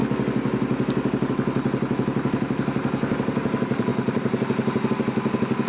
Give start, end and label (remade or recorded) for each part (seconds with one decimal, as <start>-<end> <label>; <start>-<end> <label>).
0.0-1.3 recorded; 1.3-5.7 remade